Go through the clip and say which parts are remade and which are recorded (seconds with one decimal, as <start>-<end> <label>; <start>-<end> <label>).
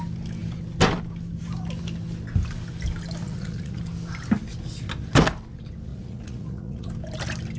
0.0-3.2 recorded; 3.2-3.8 remade; 3.8-5.9 recorded; 5.9-6.9 remade; 6.9-7.6 recorded